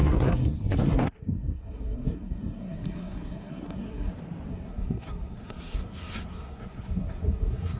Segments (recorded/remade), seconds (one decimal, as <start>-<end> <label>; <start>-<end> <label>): 0.0-4.1 remade; 4.1-4.5 recorded; 4.5-7.8 remade